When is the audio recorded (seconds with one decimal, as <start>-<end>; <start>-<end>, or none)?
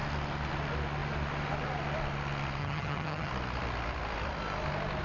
0.0-2.6; 3.3-5.0